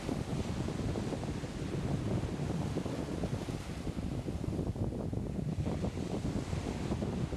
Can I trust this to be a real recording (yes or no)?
yes